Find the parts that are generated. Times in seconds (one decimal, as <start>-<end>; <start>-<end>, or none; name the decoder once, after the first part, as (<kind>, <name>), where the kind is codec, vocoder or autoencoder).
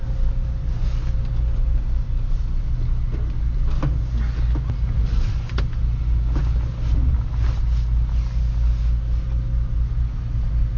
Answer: none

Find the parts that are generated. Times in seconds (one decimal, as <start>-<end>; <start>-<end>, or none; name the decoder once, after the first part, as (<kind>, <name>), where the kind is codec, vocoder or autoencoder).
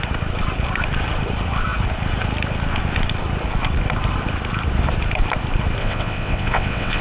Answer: 5.8-7.0 (vocoder, WaveNeXt)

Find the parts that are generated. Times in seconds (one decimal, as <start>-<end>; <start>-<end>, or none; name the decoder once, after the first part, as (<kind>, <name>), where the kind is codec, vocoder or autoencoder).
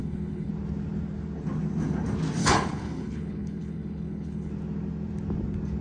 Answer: 0.0-0.5 (codec, HILCodec); 2.4-4.5